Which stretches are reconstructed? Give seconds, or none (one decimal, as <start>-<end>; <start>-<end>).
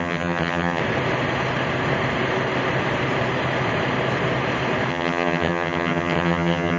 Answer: 0.0-0.8; 4.9-6.8